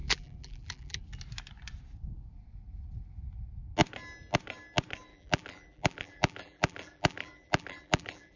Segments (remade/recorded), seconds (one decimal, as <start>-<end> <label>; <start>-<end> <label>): 0.0-1.0 remade; 1.0-5.1 recorded; 5.1-8.4 remade